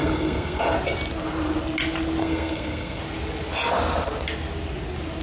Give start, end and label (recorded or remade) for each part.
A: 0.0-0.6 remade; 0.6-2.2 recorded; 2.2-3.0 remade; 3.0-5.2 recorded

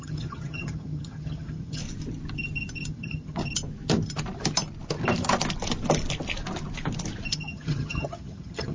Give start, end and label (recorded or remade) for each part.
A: 0.0-1.8 remade; 1.8-2.9 recorded; 2.9-3.4 remade; 3.4-7.3 recorded; 7.3-8.7 remade

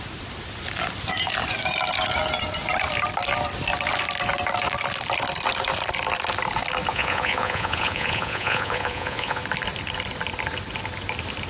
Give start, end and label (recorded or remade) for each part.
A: 0.0-6.9 recorded; 6.9-9.4 remade; 9.4-11.5 recorded

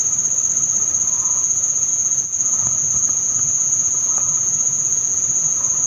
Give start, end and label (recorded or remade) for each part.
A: 0.0-1.1 recorded; 1.1-5.9 remade

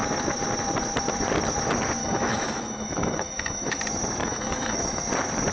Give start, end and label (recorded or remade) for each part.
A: 0.0-2.0 recorded; 2.0-3.8 remade; 3.8-4.2 recorded; 4.2-5.0 remade; 5.0-5.5 recorded

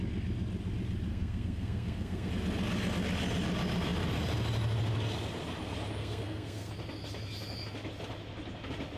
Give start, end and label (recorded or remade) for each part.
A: 0.0-1.1 recorded; 1.1-2.3 remade; 2.3-6.0 recorded; 6.0-6.7 remade; 6.7-9.0 recorded

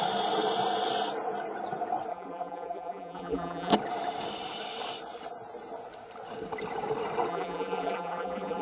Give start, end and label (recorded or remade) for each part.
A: 0.0-2.1 recorded; 2.1-3.7 remade; 3.7-7.3 recorded; 7.3-8.6 remade